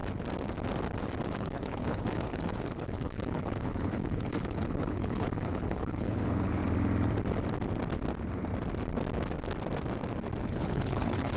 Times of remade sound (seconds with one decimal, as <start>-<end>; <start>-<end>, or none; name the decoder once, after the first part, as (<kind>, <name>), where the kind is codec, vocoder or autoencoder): 1.4-6.6 (codec, HILCodec); 10.4-11.4